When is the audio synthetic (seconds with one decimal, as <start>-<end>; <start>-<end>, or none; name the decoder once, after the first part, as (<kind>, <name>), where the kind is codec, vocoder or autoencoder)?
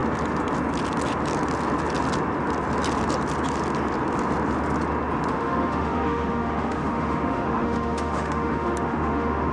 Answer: 5.3-9.5 (autoencoder, DAC-VAE)